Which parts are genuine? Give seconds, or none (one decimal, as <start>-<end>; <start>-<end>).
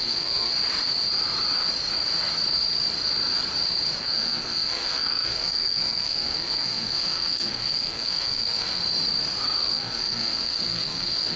0.5-4.0; 8.8-9.6